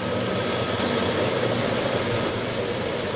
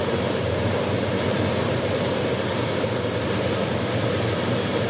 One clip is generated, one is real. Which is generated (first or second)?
second